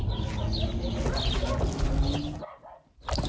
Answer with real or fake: real